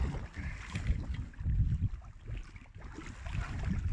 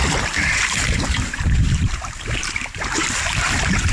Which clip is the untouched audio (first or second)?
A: first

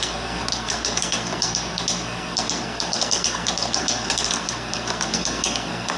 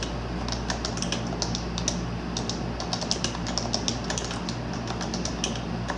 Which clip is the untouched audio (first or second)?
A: second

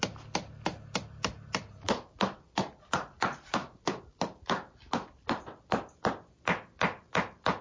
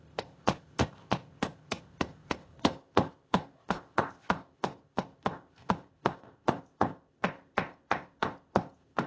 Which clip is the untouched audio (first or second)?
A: first